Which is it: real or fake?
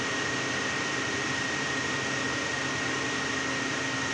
real